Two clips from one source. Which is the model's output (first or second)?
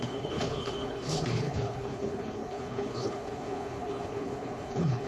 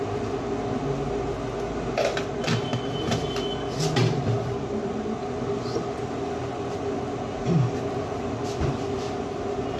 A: first